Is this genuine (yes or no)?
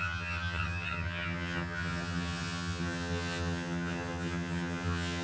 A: no